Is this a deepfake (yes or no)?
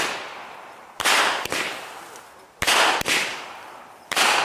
no